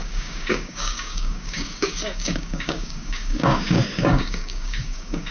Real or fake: fake